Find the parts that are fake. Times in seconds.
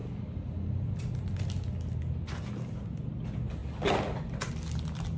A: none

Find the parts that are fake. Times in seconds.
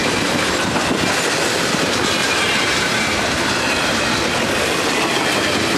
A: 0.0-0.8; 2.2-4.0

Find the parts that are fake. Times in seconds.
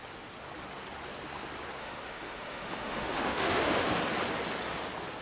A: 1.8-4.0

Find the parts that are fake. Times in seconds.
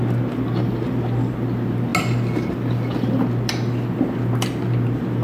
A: none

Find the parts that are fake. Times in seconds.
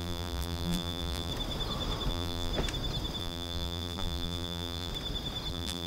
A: 0.0-1.3; 2.1-2.5; 3.2-4.9; 5.5-5.9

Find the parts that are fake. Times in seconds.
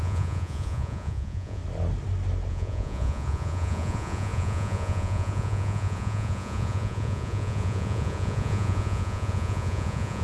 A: 0.0-1.6; 2.5-10.2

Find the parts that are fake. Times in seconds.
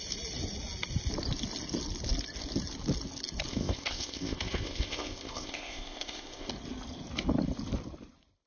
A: 3.5-6.5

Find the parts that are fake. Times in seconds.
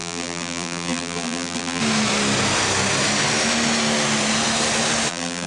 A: 0.0-1.8; 5.1-5.5